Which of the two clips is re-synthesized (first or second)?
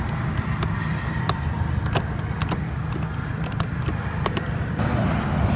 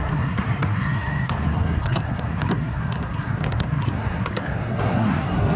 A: second